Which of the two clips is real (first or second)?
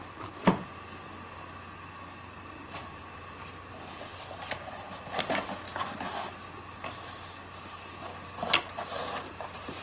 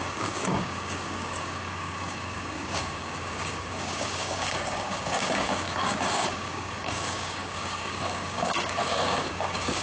first